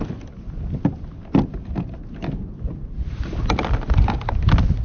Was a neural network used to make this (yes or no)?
no